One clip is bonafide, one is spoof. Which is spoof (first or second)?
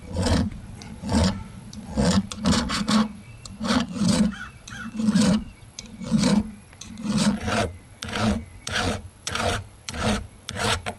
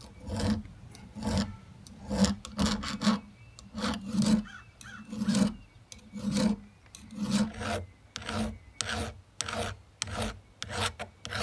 first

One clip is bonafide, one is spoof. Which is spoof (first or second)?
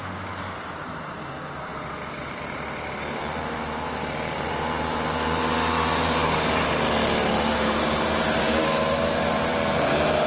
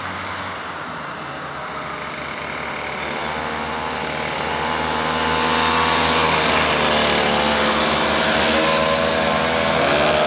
first